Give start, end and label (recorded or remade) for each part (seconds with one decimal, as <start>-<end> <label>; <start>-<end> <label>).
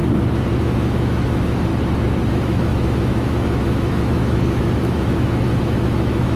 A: 0.0-0.6 recorded; 0.6-1.7 remade; 1.7-2.3 recorded; 2.3-6.4 remade